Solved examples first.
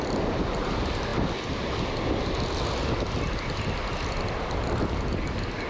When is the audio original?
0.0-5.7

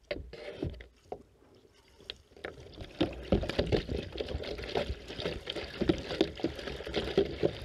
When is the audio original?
0.0-7.6

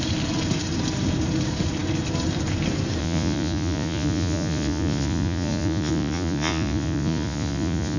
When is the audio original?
0.0-3.0

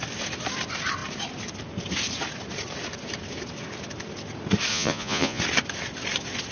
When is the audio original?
0.0-4.7; 5.4-6.5